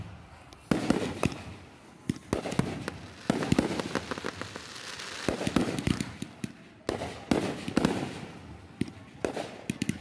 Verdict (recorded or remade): recorded